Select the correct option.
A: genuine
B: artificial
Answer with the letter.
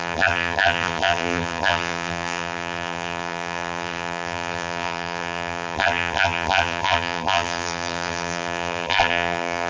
B